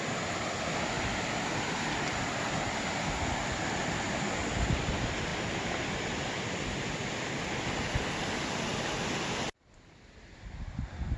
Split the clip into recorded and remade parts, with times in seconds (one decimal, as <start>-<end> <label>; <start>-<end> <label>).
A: 0.0-11.2 recorded